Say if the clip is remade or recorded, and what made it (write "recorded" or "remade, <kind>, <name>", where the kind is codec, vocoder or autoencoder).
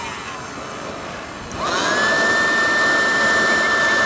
recorded